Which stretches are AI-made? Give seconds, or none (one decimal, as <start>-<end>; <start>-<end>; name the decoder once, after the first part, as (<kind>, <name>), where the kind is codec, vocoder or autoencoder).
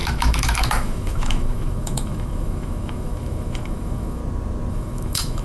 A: 0.0-4.2 (autoencoder, DAC-VAE); 4.7-5.4